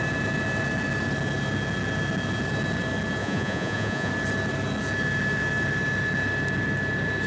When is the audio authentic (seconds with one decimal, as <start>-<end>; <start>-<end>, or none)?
0.0-3.2; 4.1-7.3